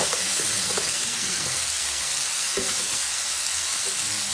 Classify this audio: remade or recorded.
remade